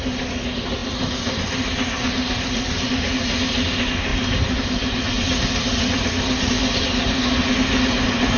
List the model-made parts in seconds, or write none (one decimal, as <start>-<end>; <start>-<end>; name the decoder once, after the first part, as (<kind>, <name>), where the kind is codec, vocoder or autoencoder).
none